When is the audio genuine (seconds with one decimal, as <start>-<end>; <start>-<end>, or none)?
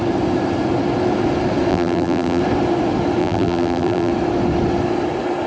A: 0.0-1.7; 2.4-3.2; 4.1-5.5